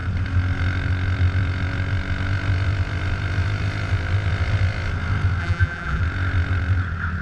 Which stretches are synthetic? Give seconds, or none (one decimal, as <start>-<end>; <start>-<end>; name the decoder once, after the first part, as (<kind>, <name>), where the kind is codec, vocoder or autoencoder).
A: 5.4-6.0 (vocoder, BigVGAN v2)